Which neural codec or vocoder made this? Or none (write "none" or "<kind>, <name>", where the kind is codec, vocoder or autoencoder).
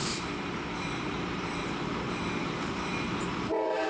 vocoder, BigVGAN v2